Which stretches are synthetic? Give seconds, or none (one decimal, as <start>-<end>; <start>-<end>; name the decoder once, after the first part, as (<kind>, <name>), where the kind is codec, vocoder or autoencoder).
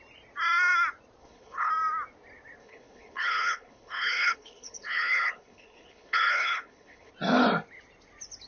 1.2-1.7 (codec, HILCodec); 2.6-7.1